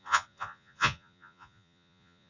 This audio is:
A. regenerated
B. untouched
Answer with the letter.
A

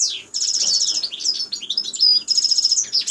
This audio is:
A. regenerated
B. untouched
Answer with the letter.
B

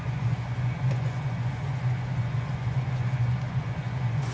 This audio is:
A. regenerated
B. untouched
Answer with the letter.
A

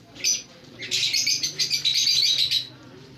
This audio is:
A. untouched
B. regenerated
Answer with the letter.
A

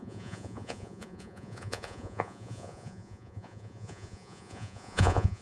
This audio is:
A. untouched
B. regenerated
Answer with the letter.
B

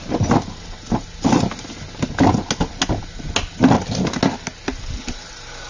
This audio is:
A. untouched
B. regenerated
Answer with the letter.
A